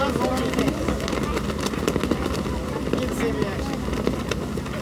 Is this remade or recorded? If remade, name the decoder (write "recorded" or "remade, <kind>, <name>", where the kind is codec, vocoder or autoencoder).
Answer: recorded